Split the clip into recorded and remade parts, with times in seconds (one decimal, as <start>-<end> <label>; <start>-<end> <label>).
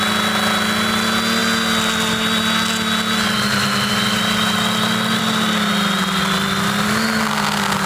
0.0-7.9 recorded